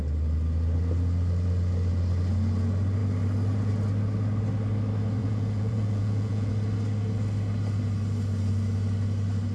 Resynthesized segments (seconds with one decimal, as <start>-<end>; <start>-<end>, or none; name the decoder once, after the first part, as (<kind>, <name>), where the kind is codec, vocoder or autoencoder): 5.2-6.5 (vocoder, Vocos)